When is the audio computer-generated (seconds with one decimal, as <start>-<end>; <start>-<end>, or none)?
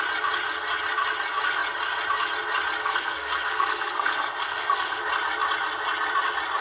2.8-5.0